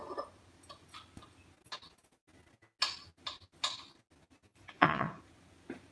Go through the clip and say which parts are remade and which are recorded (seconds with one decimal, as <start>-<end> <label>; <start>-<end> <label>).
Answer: 0.0-4.5 recorded; 4.5-5.2 remade; 5.2-5.9 recorded